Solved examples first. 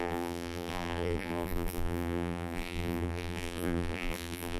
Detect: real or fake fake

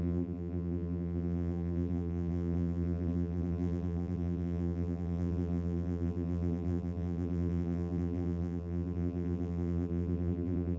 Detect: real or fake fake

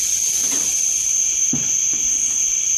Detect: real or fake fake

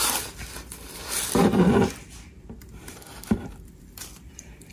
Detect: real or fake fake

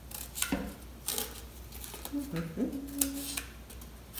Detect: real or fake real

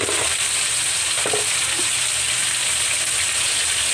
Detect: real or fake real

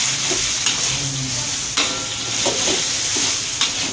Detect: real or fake real